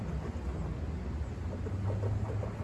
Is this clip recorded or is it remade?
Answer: recorded